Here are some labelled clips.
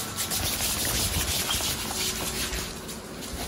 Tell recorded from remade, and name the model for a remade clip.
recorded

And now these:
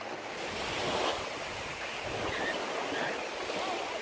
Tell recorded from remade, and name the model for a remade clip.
recorded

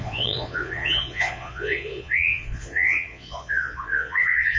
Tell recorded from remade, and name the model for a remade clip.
remade, vocoder, Vocos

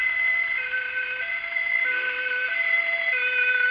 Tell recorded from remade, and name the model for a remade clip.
recorded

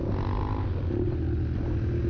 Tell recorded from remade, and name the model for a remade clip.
recorded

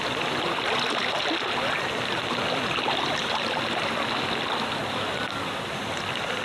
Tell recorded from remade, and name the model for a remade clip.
recorded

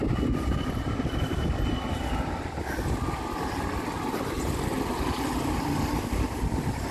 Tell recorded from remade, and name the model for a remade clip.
recorded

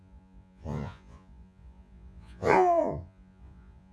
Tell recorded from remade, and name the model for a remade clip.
remade, vocoder, Vocos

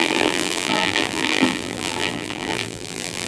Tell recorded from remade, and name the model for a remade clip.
remade, vocoder, BigVGAN v2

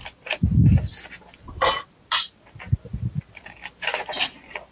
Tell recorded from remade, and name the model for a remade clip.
recorded